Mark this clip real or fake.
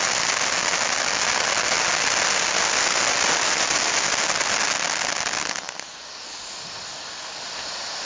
real